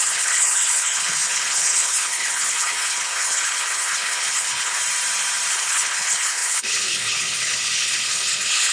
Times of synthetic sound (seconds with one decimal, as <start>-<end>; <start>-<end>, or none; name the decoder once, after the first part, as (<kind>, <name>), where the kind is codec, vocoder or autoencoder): 0.0-4.8 (codec, HILCodec); 5.5-8.7